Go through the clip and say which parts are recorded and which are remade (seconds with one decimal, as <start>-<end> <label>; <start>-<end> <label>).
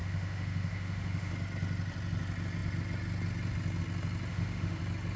0.0-1.3 remade; 1.3-4.3 recorded; 4.3-4.8 remade; 4.8-5.2 recorded